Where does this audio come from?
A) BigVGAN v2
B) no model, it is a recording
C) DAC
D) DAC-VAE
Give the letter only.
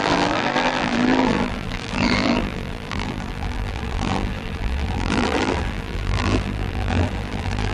A